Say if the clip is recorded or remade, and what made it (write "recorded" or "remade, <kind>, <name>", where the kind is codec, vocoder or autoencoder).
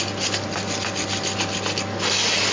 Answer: recorded